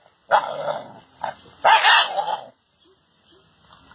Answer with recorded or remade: recorded